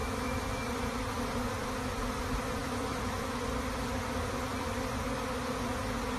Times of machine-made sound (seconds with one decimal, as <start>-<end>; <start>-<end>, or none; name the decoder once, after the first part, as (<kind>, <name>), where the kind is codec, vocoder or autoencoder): 0.0-0.7 (autoencoder, DAC-VAE); 2.6-3.4

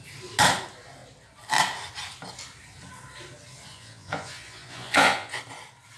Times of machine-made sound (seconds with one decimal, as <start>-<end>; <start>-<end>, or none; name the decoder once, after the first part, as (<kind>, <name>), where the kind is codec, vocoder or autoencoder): 3.7-5.4 (vocoder, Vocos)

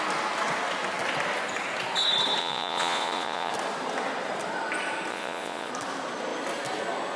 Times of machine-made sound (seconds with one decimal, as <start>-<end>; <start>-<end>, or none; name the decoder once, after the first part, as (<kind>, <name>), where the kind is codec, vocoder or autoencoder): 2.4-3.5 (vocoder, Vocos); 5.1-5.7